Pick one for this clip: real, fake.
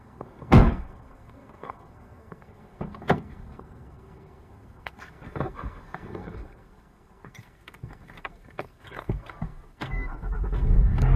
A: fake